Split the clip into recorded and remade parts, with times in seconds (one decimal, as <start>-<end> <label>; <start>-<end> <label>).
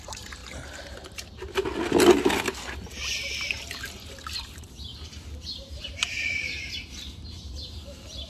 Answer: 0.0-0.4 remade; 0.4-4.4 recorded; 4.4-8.3 remade